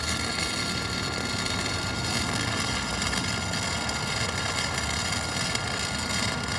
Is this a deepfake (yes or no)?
no